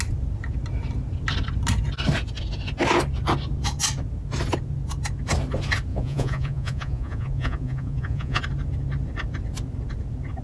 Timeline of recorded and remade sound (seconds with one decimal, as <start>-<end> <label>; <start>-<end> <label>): 0.0-5.9 recorded; 5.9-8.4 remade; 8.4-10.4 recorded